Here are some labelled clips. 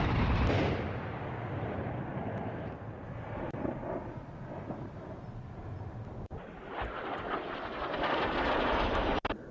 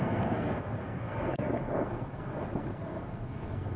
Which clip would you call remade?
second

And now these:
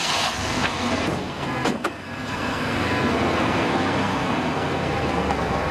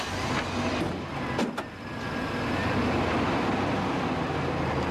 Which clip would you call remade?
first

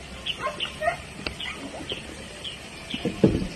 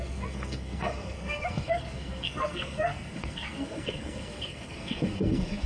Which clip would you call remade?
second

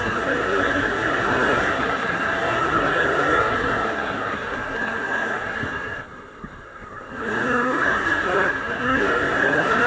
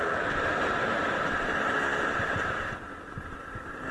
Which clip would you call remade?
first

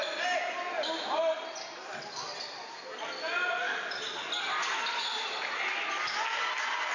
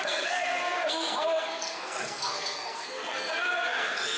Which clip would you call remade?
second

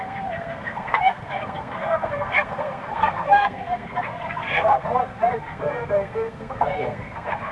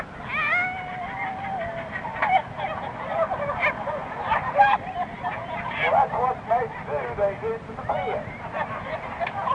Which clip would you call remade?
first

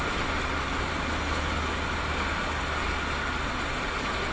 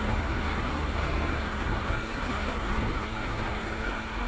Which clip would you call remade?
second